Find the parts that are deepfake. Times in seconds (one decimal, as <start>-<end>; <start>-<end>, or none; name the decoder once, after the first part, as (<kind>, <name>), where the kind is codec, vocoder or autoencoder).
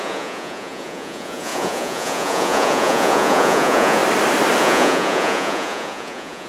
0.0-4.0 (vocoder, Vocos); 4.6-6.5